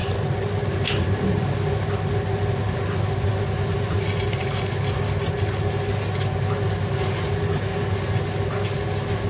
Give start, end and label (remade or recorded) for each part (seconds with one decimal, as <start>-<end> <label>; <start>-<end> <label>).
0.0-9.3 recorded